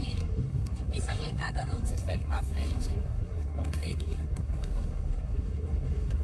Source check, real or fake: fake